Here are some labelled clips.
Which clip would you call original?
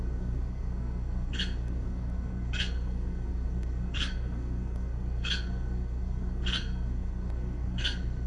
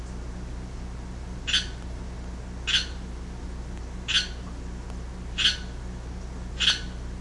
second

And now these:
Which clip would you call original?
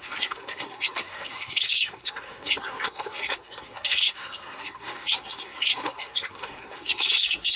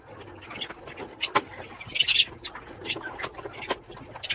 second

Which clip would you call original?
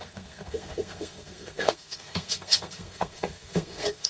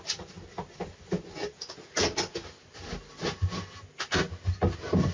second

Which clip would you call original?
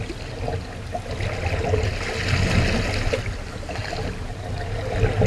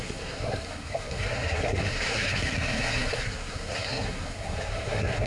first